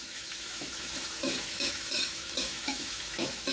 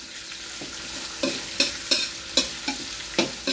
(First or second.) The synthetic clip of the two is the first